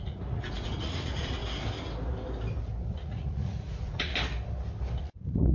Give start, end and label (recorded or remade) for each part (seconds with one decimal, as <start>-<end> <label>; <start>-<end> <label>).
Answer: 0.0-1.4 remade; 1.4-2.9 recorded; 2.9-4.1 remade; 4.1-5.0 recorded; 5.0-5.5 remade